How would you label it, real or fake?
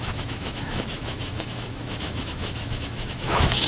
fake